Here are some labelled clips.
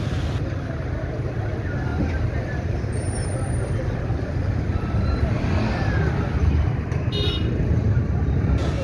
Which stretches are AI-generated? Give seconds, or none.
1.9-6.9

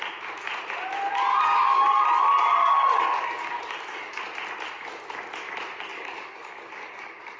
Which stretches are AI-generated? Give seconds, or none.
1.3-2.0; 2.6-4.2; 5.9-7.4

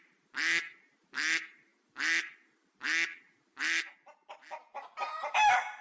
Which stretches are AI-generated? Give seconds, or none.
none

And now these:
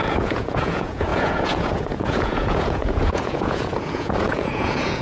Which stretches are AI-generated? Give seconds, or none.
0.0-5.0

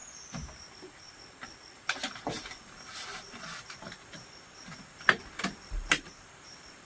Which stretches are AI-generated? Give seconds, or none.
0.7-6.8